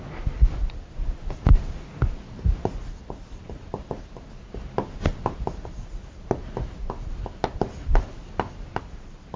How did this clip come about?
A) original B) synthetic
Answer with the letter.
A